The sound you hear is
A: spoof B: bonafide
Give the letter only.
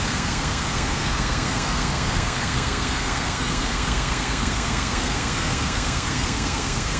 A